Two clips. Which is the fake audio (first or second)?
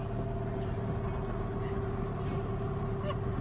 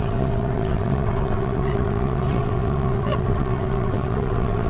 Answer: second